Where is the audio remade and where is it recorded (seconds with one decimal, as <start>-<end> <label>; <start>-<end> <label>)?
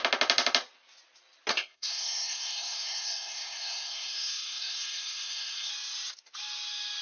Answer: 0.0-1.5 recorded; 1.5-5.7 remade; 5.7-7.0 recorded